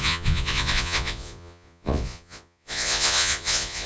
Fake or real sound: fake